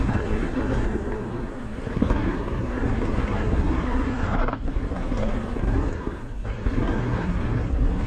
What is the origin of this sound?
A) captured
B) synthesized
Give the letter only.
B